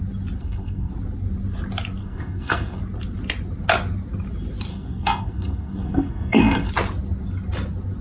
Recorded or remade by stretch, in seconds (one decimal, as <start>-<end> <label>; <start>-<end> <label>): 0.0-0.4 recorded; 0.4-0.9 remade; 0.9-2.0 recorded; 2.0-2.8 remade; 2.8-4.7 recorded; 4.7-6.7 remade; 6.7-8.0 recorded